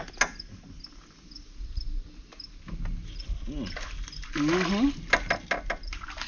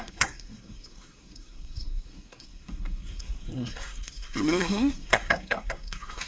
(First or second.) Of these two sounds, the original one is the first